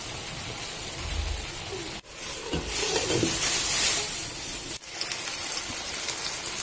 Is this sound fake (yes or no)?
no